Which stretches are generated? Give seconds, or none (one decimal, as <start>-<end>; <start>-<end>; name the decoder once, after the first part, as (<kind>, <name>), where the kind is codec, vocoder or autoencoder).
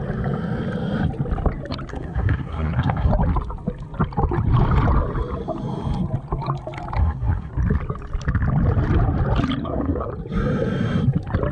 1.9-3.1 (codec, SNAC); 7.0-7.5; 9.6-10.1